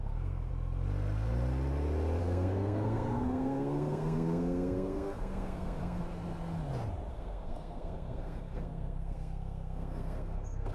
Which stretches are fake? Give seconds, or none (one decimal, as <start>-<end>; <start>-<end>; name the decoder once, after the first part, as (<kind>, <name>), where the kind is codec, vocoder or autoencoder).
0.0-0.5 (codec, SNAC); 2.2-6.0; 7.1-10.7